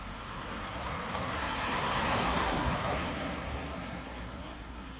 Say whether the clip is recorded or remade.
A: remade